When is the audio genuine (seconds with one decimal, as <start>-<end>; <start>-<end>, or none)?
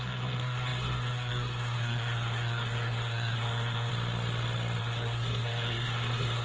3.9-4.8